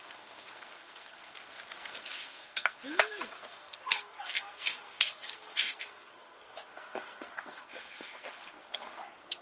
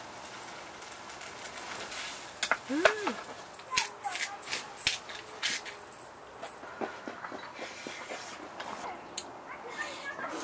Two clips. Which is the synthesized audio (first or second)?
first